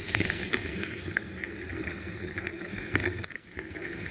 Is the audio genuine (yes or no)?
no